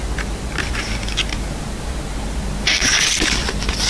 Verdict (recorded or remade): recorded